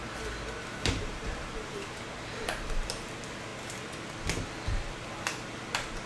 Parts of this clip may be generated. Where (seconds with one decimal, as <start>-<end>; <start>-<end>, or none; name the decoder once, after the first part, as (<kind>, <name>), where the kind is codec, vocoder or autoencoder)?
0.7-3.5 (vocoder, BigVGAN v2)

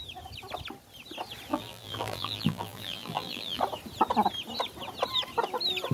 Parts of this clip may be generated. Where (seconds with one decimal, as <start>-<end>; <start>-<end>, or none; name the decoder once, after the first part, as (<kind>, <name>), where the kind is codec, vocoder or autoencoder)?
1.5-3.6 (vocoder, BigVGAN v2)